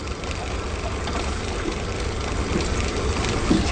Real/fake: real